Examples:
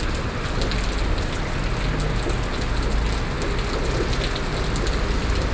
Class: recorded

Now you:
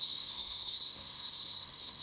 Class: remade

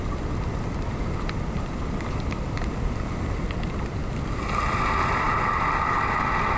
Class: recorded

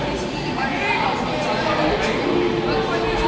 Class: recorded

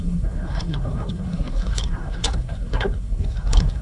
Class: remade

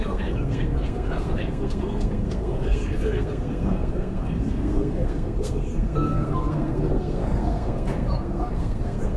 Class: remade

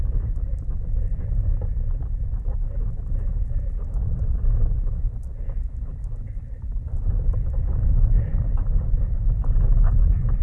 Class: recorded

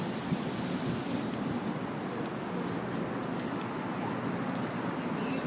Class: recorded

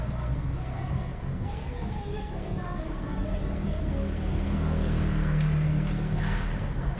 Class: remade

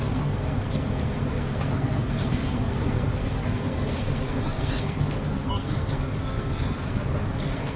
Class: remade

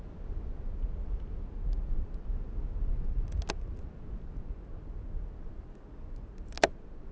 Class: recorded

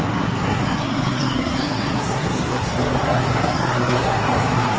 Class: remade